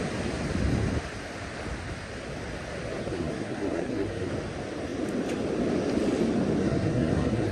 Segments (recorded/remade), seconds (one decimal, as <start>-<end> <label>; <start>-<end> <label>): 0.0-3.0 recorded; 3.0-4.3 remade; 4.3-6.6 recorded; 6.6-7.5 remade